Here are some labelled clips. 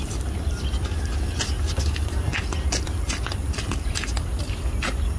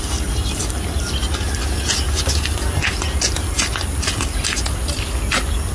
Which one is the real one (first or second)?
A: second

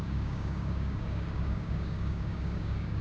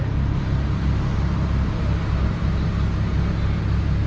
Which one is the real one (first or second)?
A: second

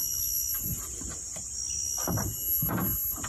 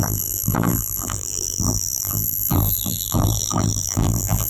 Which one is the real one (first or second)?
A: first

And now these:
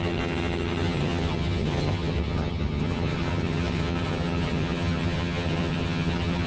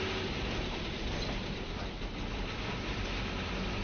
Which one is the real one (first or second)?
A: second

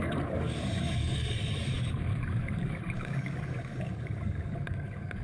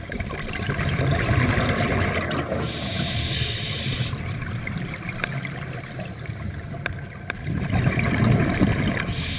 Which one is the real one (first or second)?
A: second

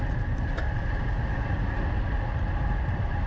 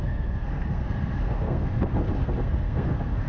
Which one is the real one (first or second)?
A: first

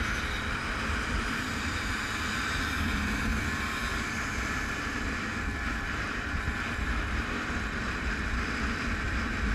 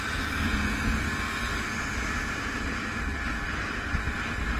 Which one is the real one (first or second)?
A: second